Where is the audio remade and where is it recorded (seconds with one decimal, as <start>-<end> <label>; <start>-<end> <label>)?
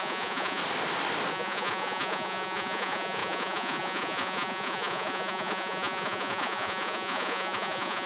0.0-0.6 remade; 0.6-1.3 recorded; 1.3-8.1 remade